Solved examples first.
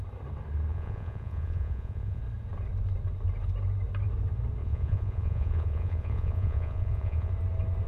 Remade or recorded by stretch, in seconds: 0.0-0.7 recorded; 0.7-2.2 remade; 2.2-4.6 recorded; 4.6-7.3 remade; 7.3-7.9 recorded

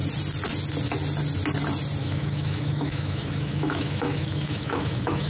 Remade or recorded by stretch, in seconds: 0.0-2.0 recorded; 2.0-5.3 remade